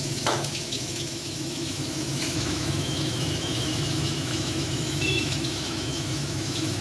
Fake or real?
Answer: fake